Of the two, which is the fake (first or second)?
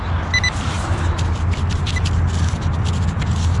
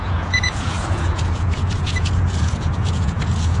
second